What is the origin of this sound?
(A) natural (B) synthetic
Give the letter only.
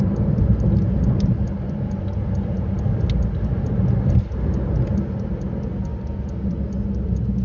A